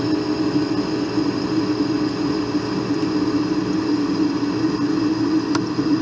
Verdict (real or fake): real